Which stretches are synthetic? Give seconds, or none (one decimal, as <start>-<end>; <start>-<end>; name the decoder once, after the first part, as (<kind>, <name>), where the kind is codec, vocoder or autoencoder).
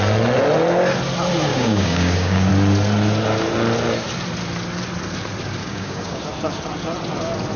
1.5-2.5 (codec, DAC); 5.6-6.2